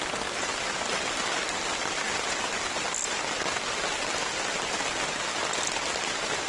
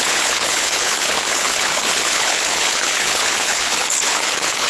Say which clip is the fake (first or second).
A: second